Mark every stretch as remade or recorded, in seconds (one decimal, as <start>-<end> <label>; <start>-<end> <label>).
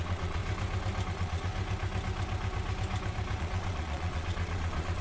0.0-0.4 remade; 0.4-1.1 recorded; 1.1-1.5 remade; 1.5-3.4 recorded; 3.4-5.0 remade